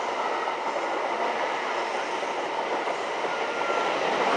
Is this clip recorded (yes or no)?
yes